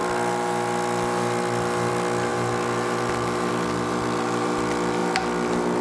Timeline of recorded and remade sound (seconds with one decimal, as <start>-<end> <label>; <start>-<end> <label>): 0.0-5.8 recorded